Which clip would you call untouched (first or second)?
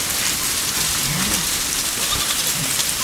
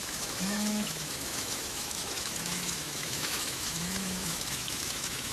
first